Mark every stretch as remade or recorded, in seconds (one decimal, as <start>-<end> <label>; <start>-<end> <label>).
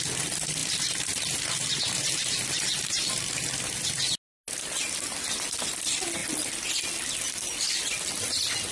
0.0-8.7 recorded